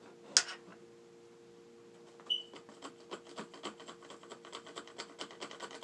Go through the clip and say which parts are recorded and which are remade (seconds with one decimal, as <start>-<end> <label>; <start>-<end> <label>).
0.0-5.8 recorded